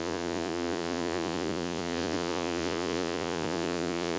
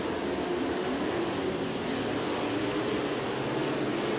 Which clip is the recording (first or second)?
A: second